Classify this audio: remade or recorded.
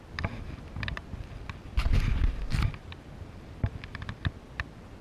recorded